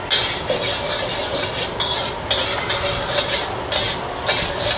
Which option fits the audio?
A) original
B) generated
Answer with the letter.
A